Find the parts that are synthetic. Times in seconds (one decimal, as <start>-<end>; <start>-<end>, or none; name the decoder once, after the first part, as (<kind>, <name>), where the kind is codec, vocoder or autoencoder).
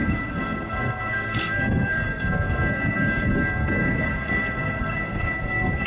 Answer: 0.0-5.9 (codec, SNAC)